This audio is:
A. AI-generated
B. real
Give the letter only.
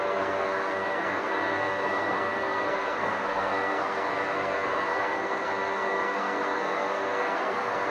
A